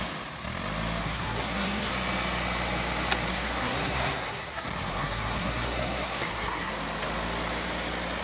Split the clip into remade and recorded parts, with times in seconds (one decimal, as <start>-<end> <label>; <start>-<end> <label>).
0.0-1.0 recorded; 1.0-1.9 remade; 1.9-3.3 recorded; 3.3-6.7 remade; 6.7-8.2 recorded